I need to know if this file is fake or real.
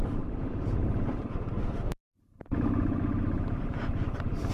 fake